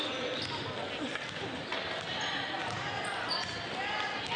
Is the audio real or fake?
real